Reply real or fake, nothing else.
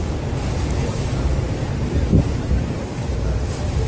real